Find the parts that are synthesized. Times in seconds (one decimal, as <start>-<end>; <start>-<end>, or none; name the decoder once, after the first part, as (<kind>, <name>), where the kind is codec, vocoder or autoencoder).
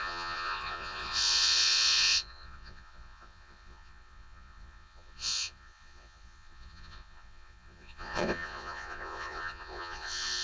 0.0-10.4 (vocoder, Vocos)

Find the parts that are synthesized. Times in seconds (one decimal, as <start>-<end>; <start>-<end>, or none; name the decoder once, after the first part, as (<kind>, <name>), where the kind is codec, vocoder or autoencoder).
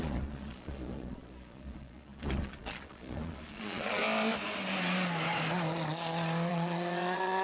0.0-4.0 (vocoder, Vocos); 6.5-7.4